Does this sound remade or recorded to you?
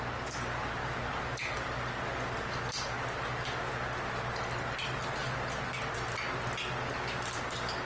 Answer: recorded